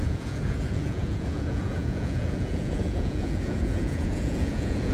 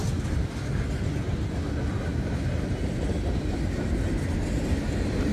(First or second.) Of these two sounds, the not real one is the first